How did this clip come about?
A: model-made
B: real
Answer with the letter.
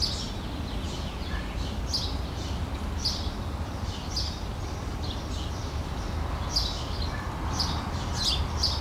B